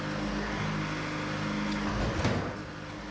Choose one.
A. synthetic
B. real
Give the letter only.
B